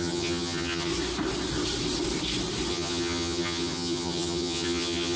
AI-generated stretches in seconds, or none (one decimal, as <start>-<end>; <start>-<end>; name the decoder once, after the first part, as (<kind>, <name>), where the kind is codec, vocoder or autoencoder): 0.0-0.9 (vocoder, HiFi-GAN); 2.7-5.2